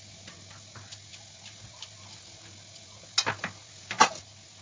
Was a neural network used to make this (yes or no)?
no